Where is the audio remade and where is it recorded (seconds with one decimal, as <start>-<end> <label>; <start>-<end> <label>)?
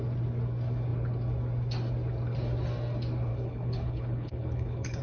0.0-3.3 recorded; 3.3-5.0 remade